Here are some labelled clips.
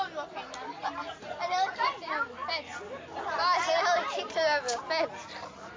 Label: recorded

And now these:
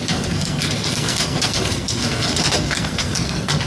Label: remade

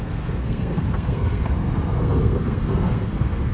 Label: remade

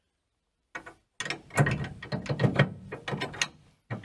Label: recorded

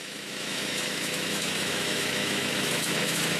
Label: remade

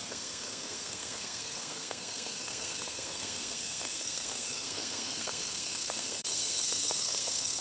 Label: remade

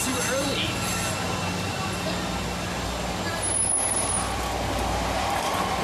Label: recorded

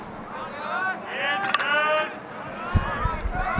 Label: recorded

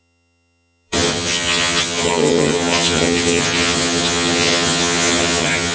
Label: remade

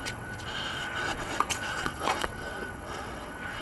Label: remade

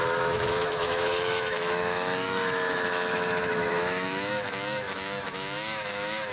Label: remade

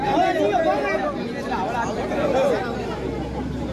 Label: recorded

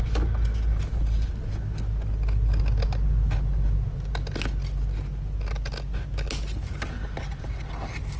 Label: recorded